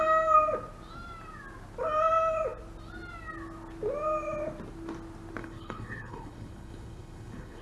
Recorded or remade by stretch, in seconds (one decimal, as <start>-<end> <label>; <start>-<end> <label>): 0.0-5.4 recorded; 5.4-7.6 remade